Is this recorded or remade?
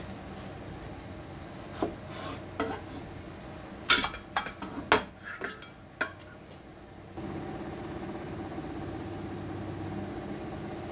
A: recorded